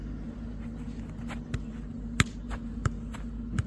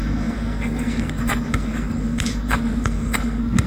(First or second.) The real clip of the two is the first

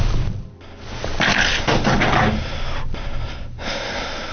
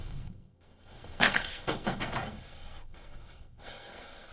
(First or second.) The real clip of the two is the first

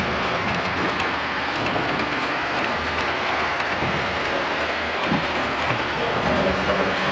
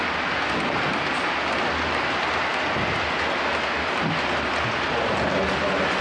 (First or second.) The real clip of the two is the second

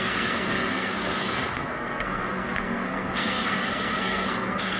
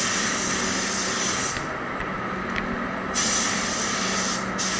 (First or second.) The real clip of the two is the second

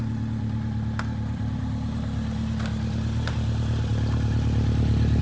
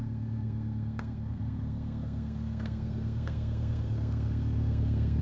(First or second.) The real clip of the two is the first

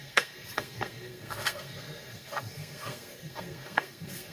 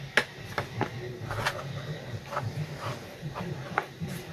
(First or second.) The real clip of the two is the second